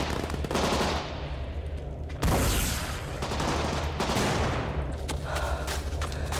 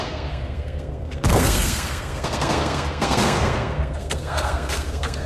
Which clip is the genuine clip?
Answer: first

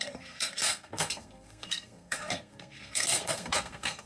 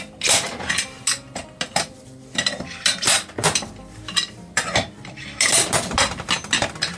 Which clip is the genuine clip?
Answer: second